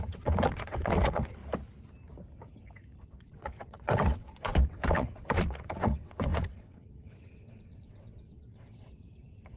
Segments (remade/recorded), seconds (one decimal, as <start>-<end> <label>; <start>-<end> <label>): 0.0-1.4 remade; 1.4-3.0 recorded; 3.0-9.6 remade